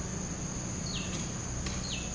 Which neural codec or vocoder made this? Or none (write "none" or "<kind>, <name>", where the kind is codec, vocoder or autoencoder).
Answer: none